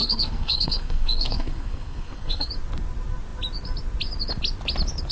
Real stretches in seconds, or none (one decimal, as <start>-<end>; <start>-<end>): 2.5-5.1